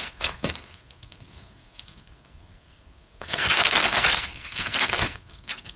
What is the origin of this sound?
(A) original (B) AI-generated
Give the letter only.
B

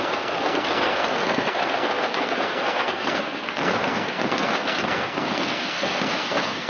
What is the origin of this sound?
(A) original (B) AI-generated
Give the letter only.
B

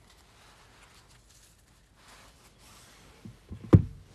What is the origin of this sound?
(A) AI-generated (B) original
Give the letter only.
B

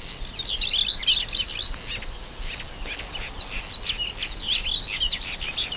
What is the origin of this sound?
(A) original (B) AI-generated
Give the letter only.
A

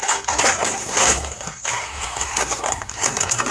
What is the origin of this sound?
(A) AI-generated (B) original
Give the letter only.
A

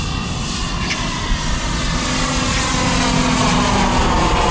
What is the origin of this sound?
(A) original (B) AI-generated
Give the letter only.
A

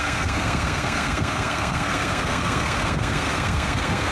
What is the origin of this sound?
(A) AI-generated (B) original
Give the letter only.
A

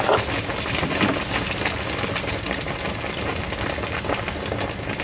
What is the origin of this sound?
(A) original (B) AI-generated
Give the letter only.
A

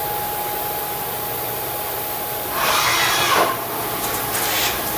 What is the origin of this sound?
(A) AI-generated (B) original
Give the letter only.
B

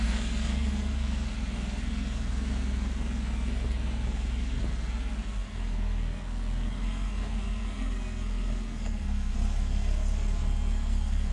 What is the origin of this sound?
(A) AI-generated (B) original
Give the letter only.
A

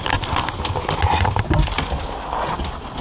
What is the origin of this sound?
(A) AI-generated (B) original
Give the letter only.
B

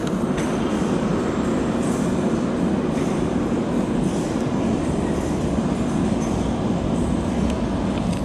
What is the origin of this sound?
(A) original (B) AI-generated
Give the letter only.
A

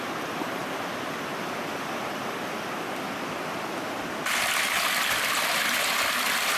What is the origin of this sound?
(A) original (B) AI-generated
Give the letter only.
A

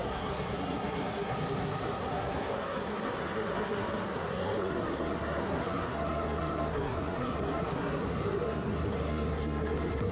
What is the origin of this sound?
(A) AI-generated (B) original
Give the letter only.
A